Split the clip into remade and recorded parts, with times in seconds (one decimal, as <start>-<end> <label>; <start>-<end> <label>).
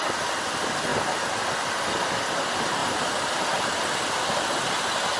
0.0-2.8 recorded; 2.8-3.4 remade; 3.4-5.2 recorded